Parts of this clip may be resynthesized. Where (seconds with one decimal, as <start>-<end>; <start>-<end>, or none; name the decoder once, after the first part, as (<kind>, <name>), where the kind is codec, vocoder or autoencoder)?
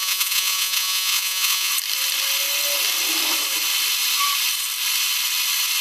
0.0-1.7 (vocoder, Vocos)